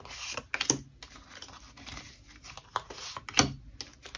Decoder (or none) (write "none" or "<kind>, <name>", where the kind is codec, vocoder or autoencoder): none